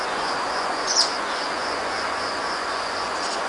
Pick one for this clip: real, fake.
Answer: fake